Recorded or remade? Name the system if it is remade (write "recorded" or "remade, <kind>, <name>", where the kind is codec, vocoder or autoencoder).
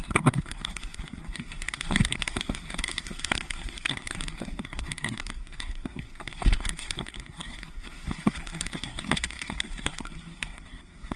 remade, codec, SNAC